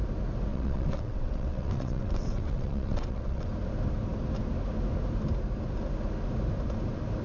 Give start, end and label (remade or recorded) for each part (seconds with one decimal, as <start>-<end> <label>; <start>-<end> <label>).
0.0-0.5 recorded; 0.5-3.5 remade; 3.5-7.2 recorded